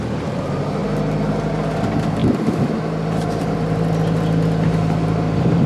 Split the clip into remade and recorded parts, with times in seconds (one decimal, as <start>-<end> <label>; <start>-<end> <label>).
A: 0.0-2.2 recorded; 2.2-5.7 remade